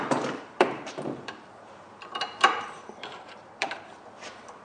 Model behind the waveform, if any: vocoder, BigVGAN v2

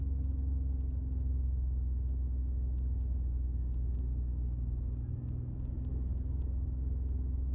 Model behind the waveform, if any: none